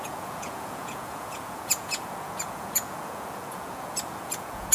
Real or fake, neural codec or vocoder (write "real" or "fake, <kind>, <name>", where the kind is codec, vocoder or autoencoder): fake, vocoder, Vocos